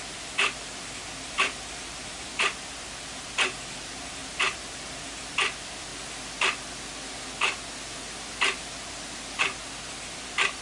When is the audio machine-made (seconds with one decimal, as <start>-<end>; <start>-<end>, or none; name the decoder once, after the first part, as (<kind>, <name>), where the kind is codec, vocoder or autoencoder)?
0.0-4.2 (vocoder, BigVGAN v2); 4.8-5.9; 9.4-10.6